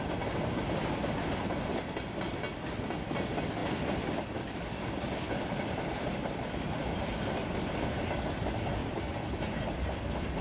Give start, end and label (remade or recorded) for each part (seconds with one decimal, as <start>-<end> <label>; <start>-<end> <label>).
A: 0.0-3.6 recorded; 3.6-8.0 remade; 8.0-8.8 recorded; 8.8-9.4 remade; 9.4-10.4 recorded